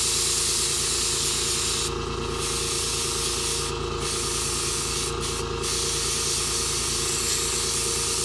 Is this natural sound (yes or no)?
yes